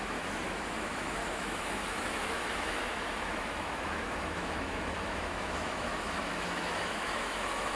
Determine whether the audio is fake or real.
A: fake